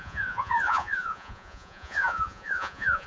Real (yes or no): no